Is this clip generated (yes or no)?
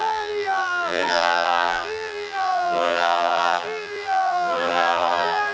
yes